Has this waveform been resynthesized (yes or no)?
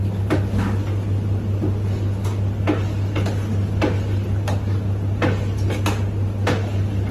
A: no